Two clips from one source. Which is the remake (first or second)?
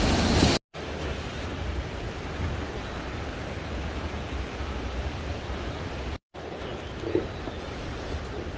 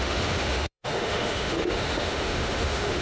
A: second